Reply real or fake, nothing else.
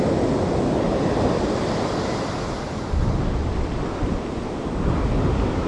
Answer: real